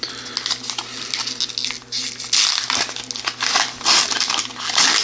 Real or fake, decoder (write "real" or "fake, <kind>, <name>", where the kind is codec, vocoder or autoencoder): real